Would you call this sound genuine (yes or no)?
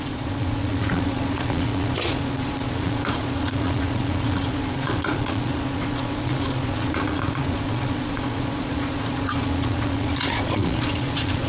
no